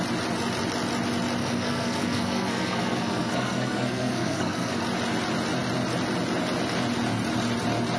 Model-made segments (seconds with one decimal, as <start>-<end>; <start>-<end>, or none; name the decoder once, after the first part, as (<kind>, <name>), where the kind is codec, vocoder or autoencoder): 1.4-4.8 (codec, SNAC)